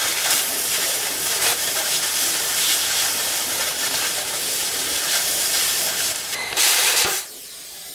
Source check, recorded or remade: remade